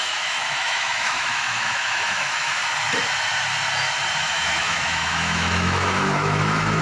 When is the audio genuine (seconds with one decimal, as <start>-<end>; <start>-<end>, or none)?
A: 2.6-4.2